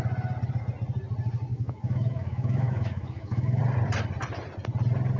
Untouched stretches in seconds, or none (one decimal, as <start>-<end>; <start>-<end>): 0.0-1.5; 3.6-5.2